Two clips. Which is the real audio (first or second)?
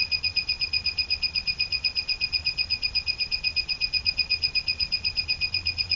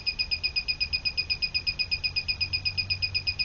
second